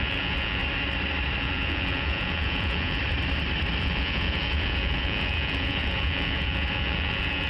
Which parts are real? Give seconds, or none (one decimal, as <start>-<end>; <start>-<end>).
0.6-1.4; 3.0-3.8